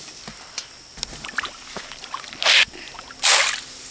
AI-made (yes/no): no